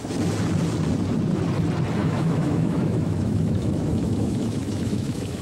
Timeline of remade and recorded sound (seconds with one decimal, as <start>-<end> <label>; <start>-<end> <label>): 0.0-2.0 recorded; 2.0-5.4 remade